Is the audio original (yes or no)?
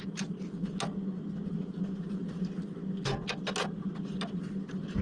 yes